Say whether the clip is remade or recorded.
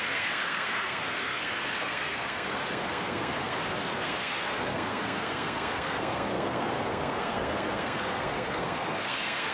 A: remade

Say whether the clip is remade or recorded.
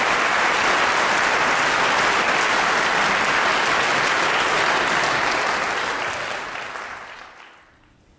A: recorded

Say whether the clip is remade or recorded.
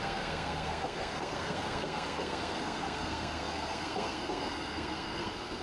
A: remade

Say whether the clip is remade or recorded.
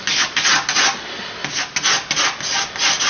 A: recorded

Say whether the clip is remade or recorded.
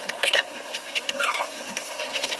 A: remade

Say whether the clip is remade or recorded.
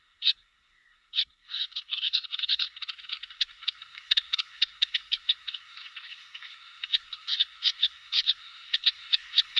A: remade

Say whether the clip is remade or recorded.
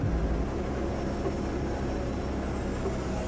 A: recorded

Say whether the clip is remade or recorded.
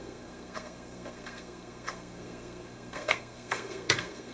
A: remade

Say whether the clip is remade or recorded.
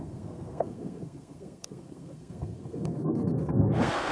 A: remade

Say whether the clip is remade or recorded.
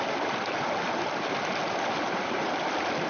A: recorded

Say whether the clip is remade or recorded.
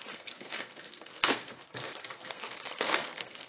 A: remade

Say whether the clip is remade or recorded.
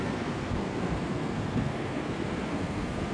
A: remade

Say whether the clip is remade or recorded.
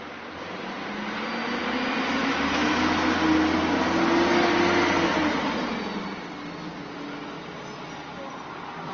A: recorded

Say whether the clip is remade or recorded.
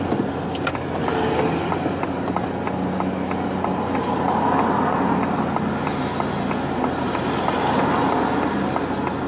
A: recorded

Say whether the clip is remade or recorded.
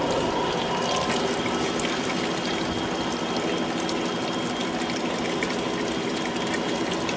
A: recorded